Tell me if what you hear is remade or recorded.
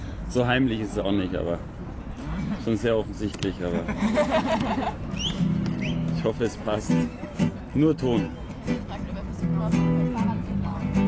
recorded